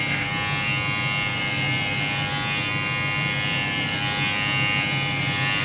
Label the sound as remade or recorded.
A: recorded